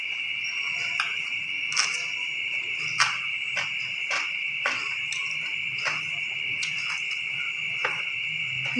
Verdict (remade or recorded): recorded